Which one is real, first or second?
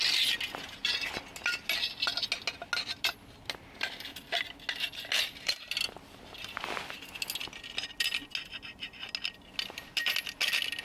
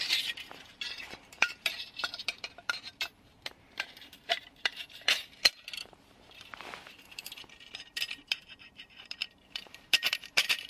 first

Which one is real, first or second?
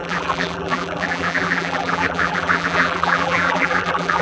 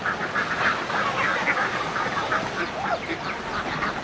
second